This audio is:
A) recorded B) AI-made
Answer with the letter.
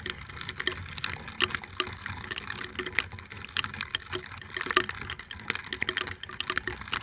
A